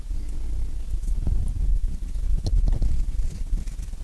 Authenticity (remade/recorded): recorded